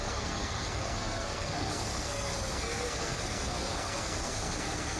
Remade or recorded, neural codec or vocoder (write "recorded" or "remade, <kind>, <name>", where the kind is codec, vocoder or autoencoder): remade, codec, SNAC